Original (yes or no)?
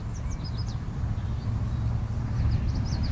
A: yes